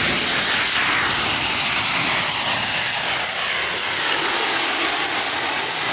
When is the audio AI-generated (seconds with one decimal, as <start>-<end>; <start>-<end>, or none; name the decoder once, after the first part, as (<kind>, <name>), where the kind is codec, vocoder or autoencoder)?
3.8-4.9 (codec, DAC)